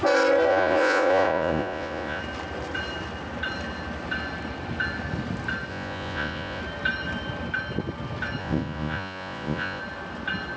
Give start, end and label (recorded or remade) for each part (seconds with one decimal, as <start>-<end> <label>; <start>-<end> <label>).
0.0-0.5 recorded; 0.5-2.2 remade; 2.2-5.7 recorded; 5.7-6.6 remade; 6.6-8.4 recorded; 8.4-9.8 remade; 9.8-10.6 recorded